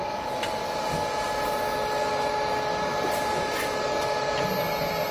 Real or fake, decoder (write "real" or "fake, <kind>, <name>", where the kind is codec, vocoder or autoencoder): real